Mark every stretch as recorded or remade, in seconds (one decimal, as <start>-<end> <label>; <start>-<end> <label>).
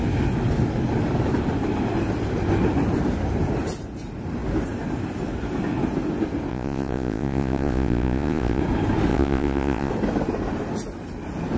0.0-6.5 recorded; 6.5-8.6 remade; 8.6-9.1 recorded; 9.1-9.9 remade; 9.9-11.6 recorded